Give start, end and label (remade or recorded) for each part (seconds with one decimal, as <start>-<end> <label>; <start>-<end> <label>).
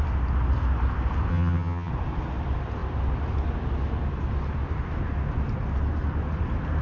0.0-1.3 recorded; 1.3-1.9 remade; 1.9-6.8 recorded